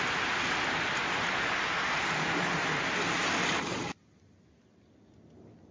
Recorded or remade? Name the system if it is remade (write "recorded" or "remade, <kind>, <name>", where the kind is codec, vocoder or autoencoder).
recorded